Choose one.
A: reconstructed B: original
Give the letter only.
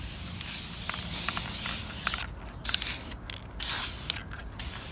B